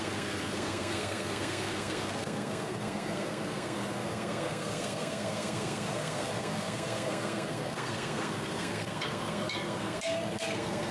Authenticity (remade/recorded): remade